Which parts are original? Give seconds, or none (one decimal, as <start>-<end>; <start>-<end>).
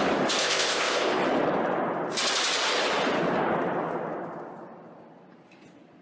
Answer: 0.0-0.4; 1.2-6.0